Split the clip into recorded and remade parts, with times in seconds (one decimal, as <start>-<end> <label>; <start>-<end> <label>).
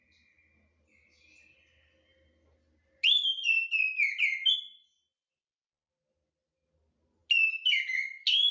0.0-8.5 recorded